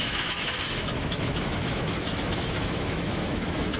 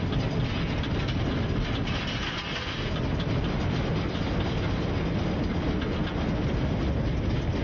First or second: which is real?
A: second